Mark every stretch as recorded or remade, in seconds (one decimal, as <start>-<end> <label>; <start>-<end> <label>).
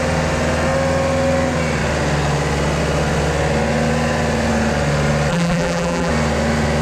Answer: 0.0-5.3 recorded; 5.3-6.1 remade; 6.1-6.8 recorded